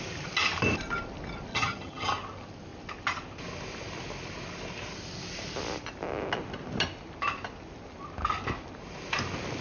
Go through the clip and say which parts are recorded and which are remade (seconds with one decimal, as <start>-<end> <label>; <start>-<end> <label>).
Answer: 0.0-1.5 recorded; 1.5-2.1 remade; 2.1-9.6 recorded